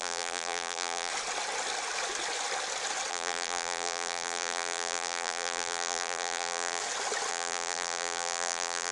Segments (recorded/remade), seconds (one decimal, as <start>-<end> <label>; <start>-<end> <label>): 0.0-1.1 remade; 1.1-3.1 recorded; 3.1-6.8 remade; 6.8-7.3 recorded; 7.3-8.9 remade

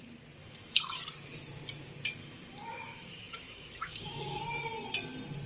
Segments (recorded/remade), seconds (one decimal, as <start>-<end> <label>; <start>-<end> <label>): 0.0-0.4 recorded; 0.4-1.0 remade; 1.0-2.2 recorded; 2.2-4.4 remade; 4.4-5.5 recorded